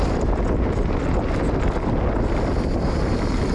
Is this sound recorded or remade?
recorded